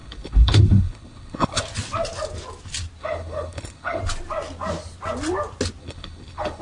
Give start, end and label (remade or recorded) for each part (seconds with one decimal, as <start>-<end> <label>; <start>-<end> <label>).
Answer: 0.0-1.6 remade; 1.6-3.0 recorded; 3.0-4.0 remade; 4.0-5.8 recorded; 5.8-6.6 remade